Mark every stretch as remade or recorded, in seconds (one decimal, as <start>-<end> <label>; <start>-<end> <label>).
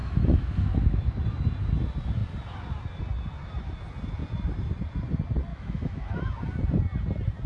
0.0-1.2 remade; 1.2-5.5 recorded; 5.5-6.2 remade; 6.2-7.5 recorded